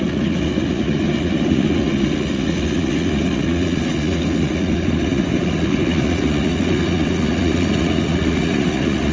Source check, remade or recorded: remade